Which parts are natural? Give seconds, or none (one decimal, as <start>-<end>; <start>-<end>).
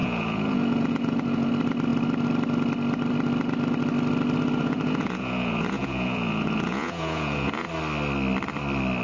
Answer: 1.5-4.6; 7.7-9.0